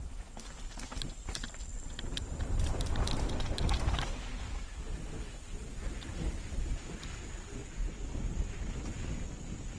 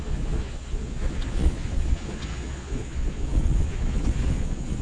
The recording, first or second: first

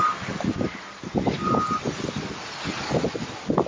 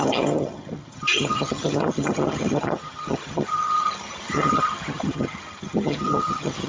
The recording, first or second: first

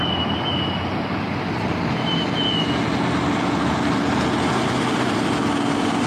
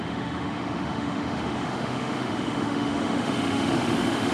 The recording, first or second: first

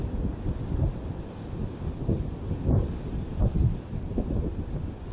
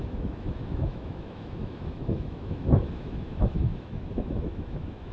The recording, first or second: first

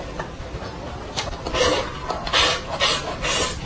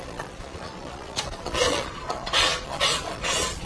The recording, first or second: first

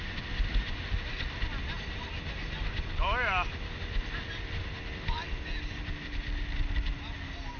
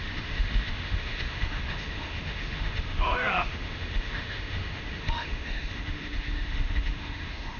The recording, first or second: first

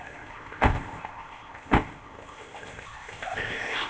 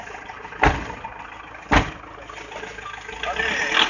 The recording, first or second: second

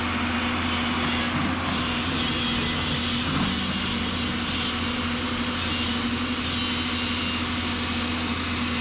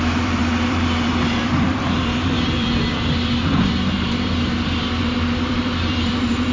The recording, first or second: first